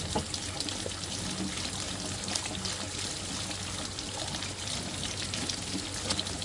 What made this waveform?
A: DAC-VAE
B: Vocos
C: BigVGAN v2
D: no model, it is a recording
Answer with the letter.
D